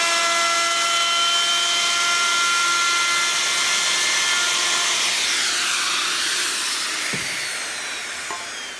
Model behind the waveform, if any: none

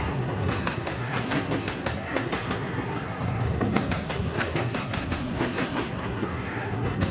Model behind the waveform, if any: codec, SNAC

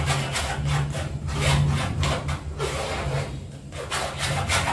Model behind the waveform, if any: none